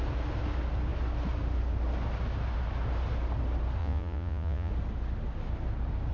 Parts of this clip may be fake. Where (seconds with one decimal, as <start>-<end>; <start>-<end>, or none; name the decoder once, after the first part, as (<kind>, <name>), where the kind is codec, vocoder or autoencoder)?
3.8-4.7 (vocoder, Vocos)